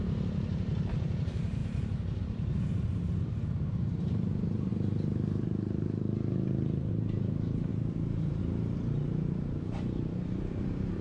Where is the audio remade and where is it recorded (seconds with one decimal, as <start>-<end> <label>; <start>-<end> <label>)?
0.0-4.7 remade; 4.7-6.9 recorded; 6.9-11.0 remade